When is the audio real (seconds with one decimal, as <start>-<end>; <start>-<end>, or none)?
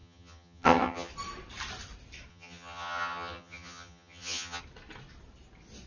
1.1-2.3; 4.6-5.9